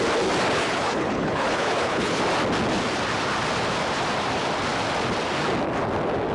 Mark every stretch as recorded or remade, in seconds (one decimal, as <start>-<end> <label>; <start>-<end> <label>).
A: 0.0-0.6 recorded; 0.6-2.2 remade; 2.2-6.3 recorded